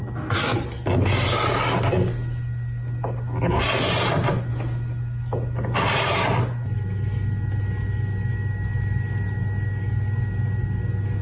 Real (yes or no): yes